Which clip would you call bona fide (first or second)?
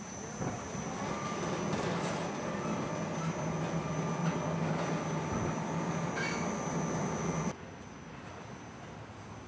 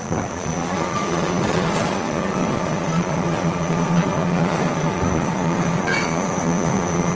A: first